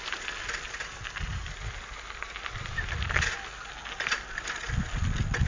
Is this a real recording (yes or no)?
yes